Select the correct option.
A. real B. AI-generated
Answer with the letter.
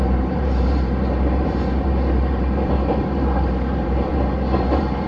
B